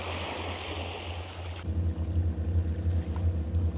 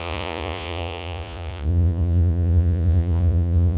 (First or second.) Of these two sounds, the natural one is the first